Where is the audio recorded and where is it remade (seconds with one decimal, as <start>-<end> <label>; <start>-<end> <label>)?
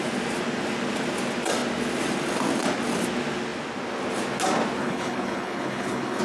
0.0-4.8 recorded; 4.8-6.2 remade